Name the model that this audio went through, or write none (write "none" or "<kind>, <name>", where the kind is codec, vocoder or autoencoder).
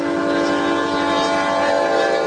none